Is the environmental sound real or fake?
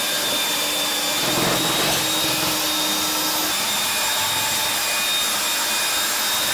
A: real